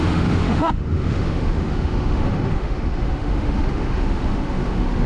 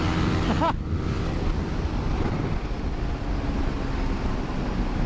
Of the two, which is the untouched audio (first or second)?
second